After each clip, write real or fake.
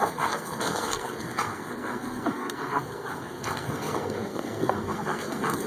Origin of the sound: fake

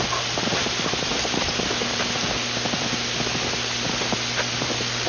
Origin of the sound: real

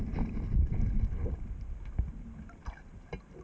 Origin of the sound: real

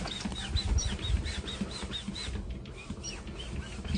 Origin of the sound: real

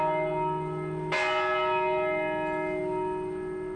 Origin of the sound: real